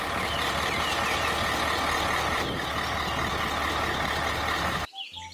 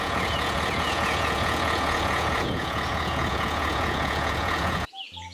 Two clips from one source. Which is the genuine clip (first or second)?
first